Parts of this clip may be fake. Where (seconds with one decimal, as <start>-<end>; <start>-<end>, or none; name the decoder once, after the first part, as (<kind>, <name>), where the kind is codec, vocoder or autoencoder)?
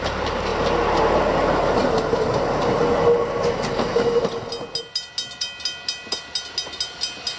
none